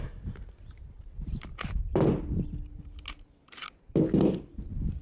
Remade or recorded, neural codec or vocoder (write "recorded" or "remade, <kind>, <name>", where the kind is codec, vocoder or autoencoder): recorded